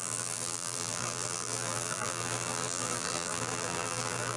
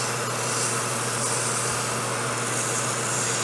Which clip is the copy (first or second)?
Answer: first